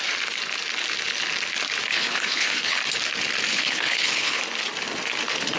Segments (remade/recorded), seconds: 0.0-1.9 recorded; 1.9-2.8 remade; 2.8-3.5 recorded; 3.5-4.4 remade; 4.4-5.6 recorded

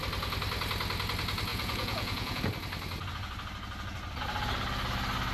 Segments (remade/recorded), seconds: 0.0-1.5 recorded; 1.5-2.4 remade; 2.4-5.3 recorded

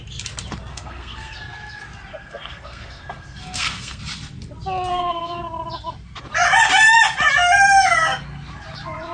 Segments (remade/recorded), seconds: 0.0-0.7 recorded; 0.7-1.4 remade; 1.4-2.1 recorded; 2.1-4.0 remade; 4.0-4.9 recorded; 4.9-5.4 remade; 5.4-9.1 recorded

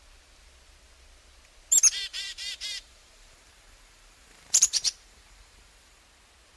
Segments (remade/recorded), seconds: 0.0-2.1 recorded; 2.1-6.0 remade; 6.0-6.6 recorded